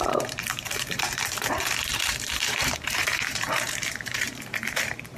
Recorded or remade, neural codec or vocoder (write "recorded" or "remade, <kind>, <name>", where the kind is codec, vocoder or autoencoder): remade, vocoder, BigVGAN v2